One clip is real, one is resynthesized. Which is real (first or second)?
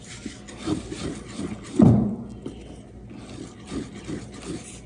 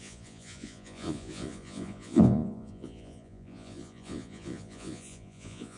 first